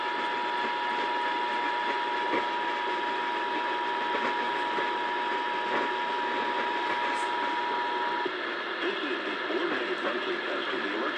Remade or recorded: recorded